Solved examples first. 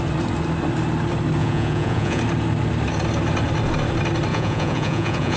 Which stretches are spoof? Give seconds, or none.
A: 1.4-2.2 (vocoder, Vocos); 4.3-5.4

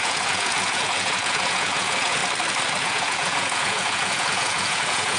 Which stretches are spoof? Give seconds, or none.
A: 0.0-2.2 (vocoder, Vocos); 2.8-5.2

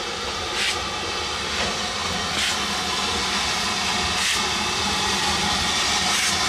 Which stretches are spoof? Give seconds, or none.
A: none

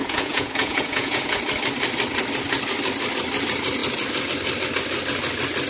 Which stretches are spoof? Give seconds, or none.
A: 0.0-1.4 (vocoder, Vocos)

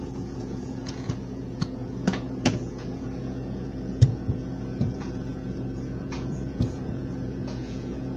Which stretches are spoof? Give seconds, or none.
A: 0.0-8.2 (vocoder, Vocos)

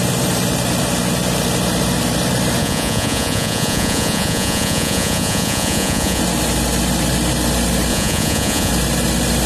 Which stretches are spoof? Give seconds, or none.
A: 2.6-6.2 (vocoder, Vocos); 7.9-8.7